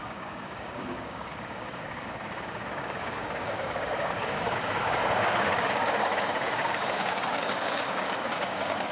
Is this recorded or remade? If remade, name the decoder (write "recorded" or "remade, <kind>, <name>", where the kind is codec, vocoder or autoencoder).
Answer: remade, codec, DAC